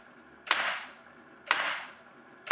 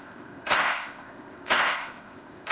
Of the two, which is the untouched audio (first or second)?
first